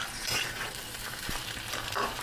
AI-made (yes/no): yes